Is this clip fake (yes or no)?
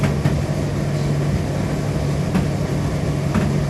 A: no